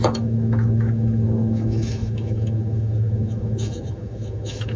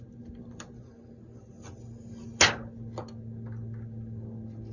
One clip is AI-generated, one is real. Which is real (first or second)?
second